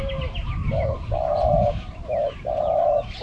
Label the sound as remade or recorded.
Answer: remade